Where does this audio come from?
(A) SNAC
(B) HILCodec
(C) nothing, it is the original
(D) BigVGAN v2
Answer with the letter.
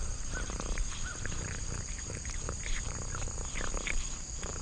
D